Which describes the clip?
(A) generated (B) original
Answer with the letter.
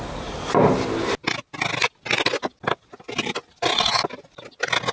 B